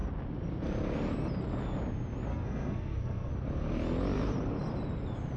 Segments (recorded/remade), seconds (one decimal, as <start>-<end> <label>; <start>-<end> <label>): 0.0-2.3 recorded; 2.3-3.3 remade; 3.3-5.4 recorded